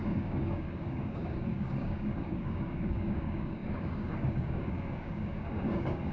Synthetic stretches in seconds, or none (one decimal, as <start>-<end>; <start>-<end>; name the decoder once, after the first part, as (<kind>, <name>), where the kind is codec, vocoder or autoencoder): 0.0-6.1 (codec, DAC)